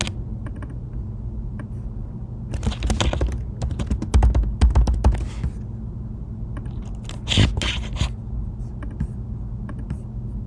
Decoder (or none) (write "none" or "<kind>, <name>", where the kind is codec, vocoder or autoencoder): none